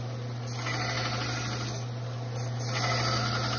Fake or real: real